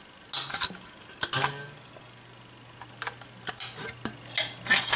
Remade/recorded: recorded